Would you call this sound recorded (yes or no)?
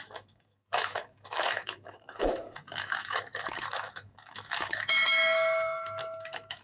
no